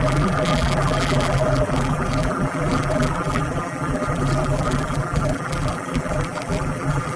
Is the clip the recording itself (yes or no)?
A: no